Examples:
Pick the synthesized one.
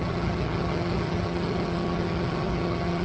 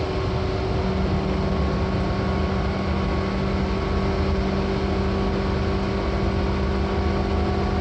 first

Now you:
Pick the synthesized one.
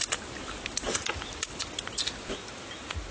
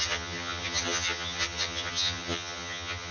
second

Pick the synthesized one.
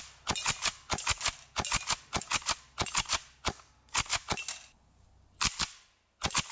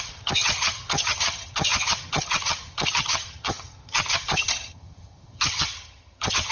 second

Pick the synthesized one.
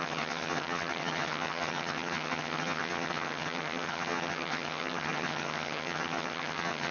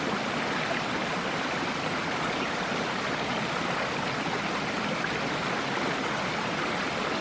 first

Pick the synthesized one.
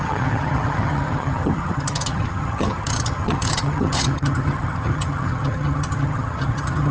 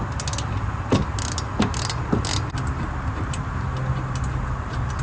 first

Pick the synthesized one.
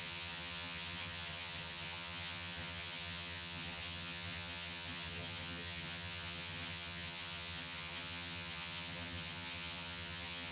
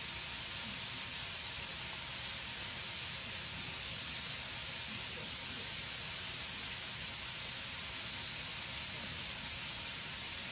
first